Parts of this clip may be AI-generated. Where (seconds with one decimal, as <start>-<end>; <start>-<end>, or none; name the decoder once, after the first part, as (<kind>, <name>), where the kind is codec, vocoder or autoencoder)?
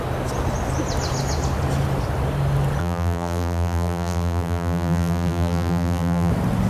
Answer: 2.8-6.3 (vocoder, BigVGAN v2)